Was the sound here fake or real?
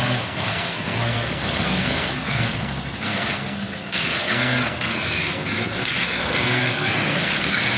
fake